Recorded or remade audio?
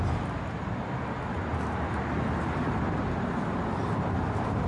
recorded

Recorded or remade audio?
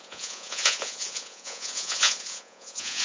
remade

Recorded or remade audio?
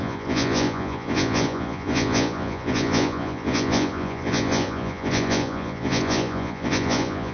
remade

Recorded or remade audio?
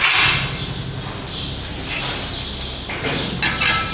recorded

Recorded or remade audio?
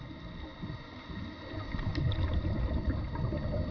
recorded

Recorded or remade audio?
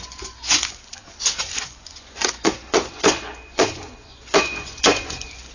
remade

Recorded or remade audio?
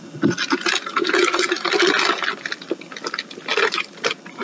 recorded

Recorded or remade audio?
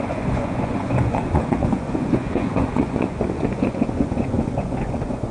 remade